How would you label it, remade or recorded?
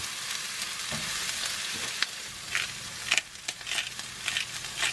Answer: recorded